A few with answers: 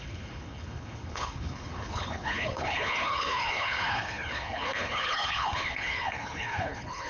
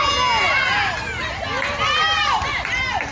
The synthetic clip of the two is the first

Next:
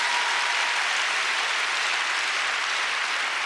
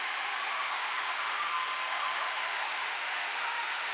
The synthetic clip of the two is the second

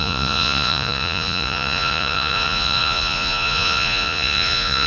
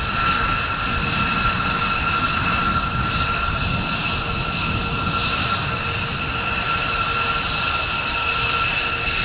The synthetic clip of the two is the first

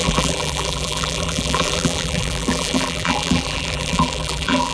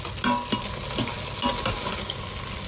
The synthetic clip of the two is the first